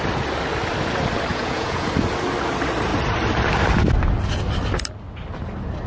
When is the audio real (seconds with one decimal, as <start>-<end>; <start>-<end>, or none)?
0.0-1.3; 1.9-5.9